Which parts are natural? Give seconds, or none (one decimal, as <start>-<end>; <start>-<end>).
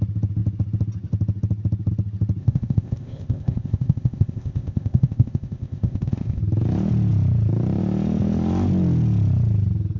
0.0-2.4; 6.4-10.0